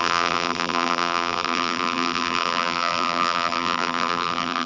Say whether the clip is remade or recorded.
remade